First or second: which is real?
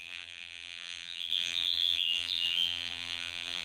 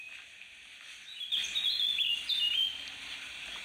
second